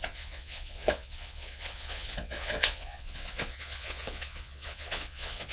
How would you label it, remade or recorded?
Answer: remade